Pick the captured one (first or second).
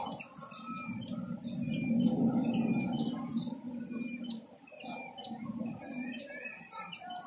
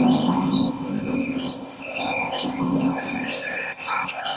first